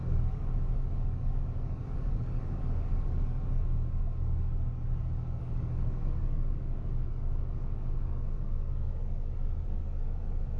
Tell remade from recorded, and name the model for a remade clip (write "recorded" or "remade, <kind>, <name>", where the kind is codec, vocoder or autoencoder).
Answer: remade, codec, DAC